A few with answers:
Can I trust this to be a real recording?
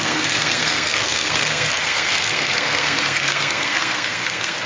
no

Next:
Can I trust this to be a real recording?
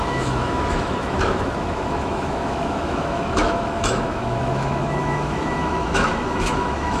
no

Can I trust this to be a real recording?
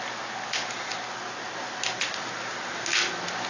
yes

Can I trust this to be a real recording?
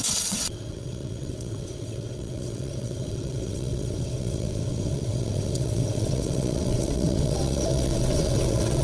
no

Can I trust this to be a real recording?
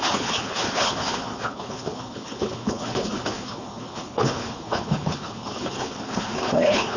no